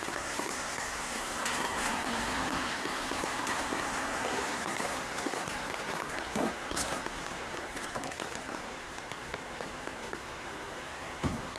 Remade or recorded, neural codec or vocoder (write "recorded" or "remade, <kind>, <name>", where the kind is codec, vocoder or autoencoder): remade, codec, SNAC